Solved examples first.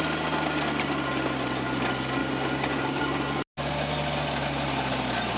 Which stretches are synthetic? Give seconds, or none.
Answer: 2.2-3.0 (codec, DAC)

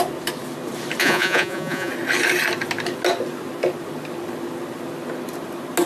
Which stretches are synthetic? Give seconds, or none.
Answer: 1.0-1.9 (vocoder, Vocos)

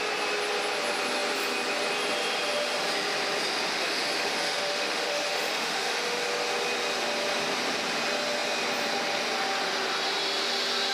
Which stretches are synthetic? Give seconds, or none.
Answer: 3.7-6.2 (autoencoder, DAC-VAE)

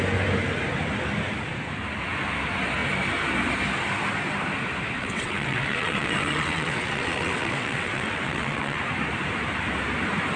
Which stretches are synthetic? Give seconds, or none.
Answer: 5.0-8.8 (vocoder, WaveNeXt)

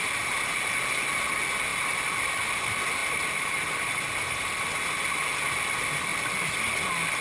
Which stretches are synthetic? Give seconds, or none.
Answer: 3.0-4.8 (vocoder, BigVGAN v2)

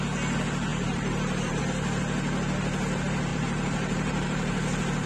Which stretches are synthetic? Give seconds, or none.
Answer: 0.7-1.6 (vocoder, BigVGAN v2); 3.3-5.1

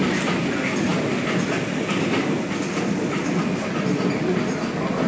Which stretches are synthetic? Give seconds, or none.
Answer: none